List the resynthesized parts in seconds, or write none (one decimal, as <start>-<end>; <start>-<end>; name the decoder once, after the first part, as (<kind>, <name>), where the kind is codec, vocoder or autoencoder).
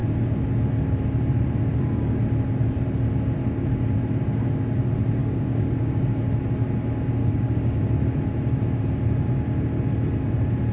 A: 5.2-6.0 (codec, DAC); 7.2-7.8